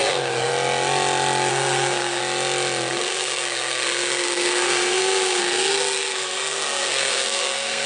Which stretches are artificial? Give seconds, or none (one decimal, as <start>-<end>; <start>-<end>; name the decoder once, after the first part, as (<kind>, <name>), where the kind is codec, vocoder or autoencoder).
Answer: 0.0-0.5 (codec, SNAC); 1.5-2.2; 2.9-7.9